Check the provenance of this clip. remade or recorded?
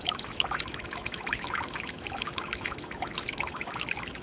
remade